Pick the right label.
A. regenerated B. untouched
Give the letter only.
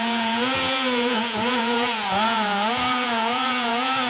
A